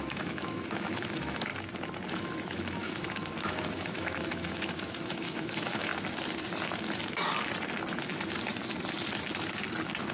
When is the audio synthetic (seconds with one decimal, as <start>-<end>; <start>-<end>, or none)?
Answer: 0.0-1.5; 2.1-5.9